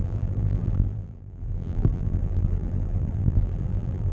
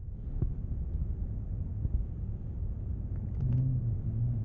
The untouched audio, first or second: second